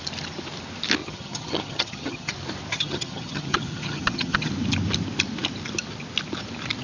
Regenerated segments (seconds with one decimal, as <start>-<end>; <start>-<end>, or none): 1.0-2.3; 2.7-4.5